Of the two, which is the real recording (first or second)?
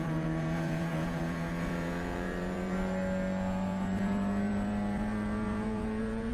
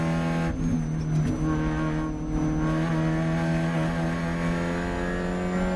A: second